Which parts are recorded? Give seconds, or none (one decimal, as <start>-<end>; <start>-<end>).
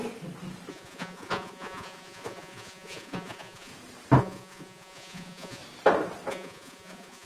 0.0-0.7; 3.7-4.2; 5.6-6.3